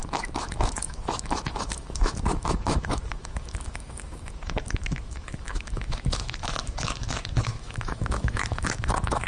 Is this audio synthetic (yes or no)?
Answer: yes